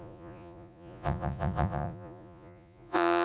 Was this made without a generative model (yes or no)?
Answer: no